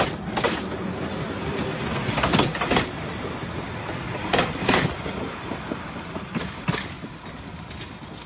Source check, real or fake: real